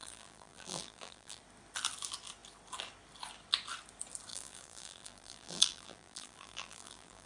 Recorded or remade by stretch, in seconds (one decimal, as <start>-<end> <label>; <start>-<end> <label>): 0.0-1.4 remade; 1.4-4.3 recorded; 4.3-7.3 remade